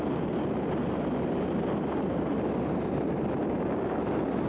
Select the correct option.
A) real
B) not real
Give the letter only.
A